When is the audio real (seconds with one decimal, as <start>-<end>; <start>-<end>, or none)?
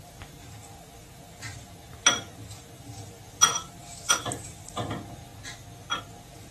5.3-6.0